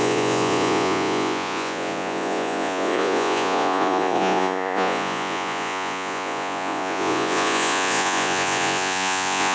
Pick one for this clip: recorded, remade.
remade